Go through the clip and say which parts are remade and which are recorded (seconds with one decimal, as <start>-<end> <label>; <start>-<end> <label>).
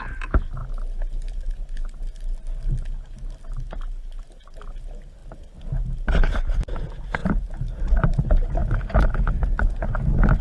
0.0-7.2 recorded; 7.2-8.2 remade; 8.2-10.4 recorded